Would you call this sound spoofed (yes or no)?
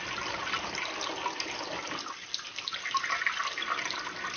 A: no